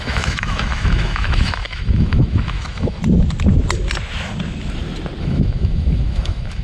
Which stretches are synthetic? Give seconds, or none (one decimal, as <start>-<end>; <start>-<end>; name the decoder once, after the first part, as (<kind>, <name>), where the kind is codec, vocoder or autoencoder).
0.0-3.0 (autoencoder, DAC-VAE); 5.2-6.6